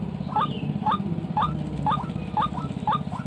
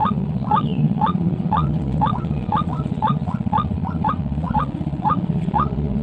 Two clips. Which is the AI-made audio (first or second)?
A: second